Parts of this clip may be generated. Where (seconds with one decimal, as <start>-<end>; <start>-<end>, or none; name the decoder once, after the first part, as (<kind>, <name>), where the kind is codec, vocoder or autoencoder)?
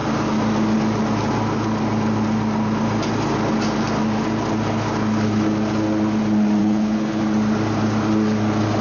6.6-7.2 (codec, HILCodec)